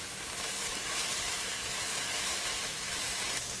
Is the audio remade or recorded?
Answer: remade